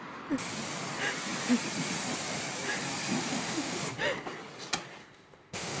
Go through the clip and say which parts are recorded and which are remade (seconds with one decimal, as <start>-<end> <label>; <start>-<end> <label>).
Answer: 0.0-3.3 recorded; 3.3-3.8 remade; 3.8-5.0 recorded; 5.0-5.8 remade